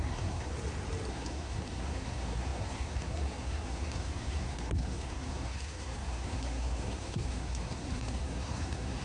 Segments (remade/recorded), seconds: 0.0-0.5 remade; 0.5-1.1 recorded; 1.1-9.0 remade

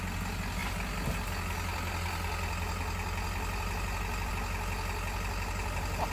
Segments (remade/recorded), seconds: 0.0-6.1 recorded

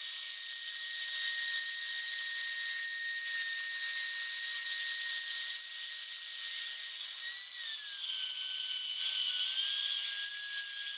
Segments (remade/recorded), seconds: 0.0-11.0 recorded